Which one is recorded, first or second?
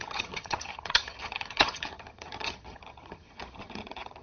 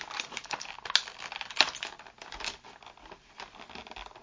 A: second